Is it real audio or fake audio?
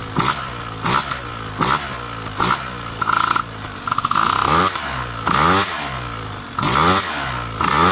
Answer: real